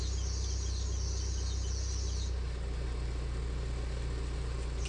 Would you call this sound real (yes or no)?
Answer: yes